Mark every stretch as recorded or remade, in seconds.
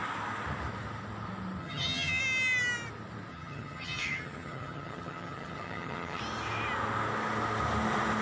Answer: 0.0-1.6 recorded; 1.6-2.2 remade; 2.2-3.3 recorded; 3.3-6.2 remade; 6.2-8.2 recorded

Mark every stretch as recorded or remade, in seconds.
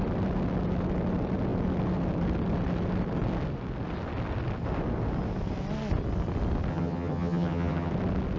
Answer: 0.0-6.7 recorded; 6.7-7.9 remade; 7.9-8.4 recorded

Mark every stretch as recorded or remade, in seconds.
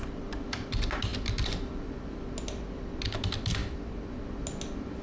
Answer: 0.0-5.0 recorded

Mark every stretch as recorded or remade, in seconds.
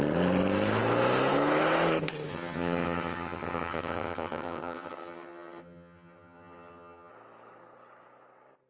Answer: 0.0-2.3 recorded; 2.3-7.1 remade; 7.1-8.7 recorded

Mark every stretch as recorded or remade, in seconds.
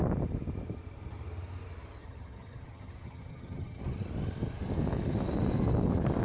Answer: 0.0-2.0 recorded; 2.0-3.8 remade; 3.8-6.2 recorded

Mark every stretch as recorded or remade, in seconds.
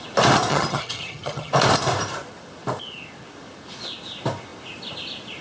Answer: 0.0-0.5 recorded; 0.5-1.5 remade; 1.5-5.4 recorded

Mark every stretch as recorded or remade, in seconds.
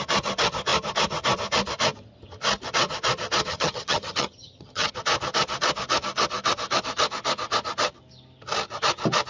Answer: 0.0-3.5 recorded; 3.5-4.9 remade; 4.9-9.3 recorded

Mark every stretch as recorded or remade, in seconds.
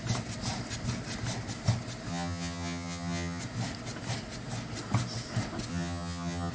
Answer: 0.0-2.1 recorded; 2.1-3.4 remade; 3.4-5.7 recorded; 5.7-6.5 remade